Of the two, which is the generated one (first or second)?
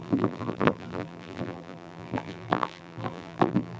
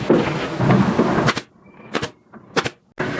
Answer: first